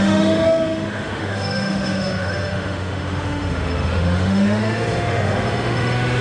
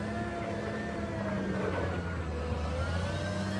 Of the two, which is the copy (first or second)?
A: first